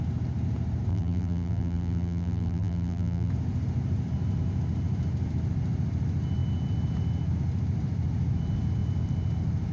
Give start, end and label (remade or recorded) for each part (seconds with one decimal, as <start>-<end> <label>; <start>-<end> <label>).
0.0-0.9 recorded; 0.9-3.3 remade; 3.3-9.7 recorded